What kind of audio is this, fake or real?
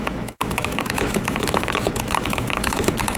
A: fake